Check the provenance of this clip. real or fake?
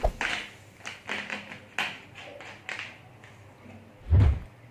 real